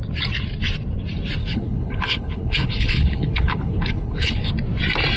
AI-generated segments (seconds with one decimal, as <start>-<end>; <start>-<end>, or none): 1.4-4.5